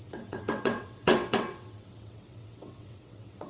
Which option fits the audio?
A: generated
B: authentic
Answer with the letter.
A